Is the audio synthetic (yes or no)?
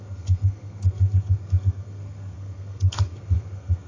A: yes